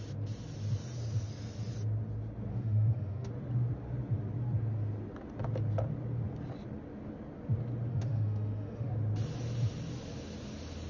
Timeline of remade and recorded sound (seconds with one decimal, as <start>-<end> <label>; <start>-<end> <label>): 0.0-2.5 recorded; 2.5-3.3 remade; 3.3-7.9 recorded; 7.9-8.9 remade; 8.9-10.9 recorded